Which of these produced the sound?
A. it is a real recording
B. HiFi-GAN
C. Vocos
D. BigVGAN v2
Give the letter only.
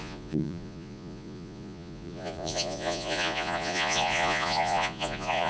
C